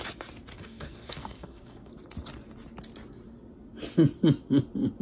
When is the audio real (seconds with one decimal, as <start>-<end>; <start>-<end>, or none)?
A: 0.0-0.5; 1.9-5.0